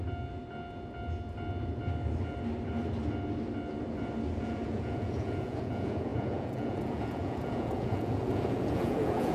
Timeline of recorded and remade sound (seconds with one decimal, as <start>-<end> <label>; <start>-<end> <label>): 0.0-4.4 recorded; 4.4-9.3 remade